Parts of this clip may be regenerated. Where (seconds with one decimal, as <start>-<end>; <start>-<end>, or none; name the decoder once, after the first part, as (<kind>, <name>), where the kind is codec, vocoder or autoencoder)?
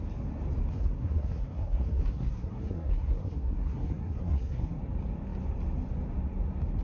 0.7-4.8 (codec, SNAC)